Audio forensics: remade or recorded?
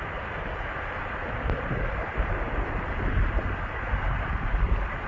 recorded